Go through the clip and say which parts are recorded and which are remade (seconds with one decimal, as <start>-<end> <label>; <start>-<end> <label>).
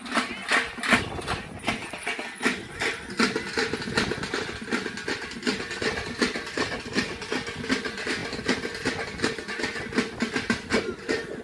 0.0-11.4 recorded